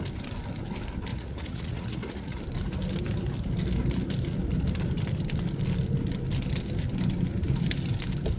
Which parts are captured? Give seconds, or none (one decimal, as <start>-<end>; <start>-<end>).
0.0-1.1; 2.4-8.4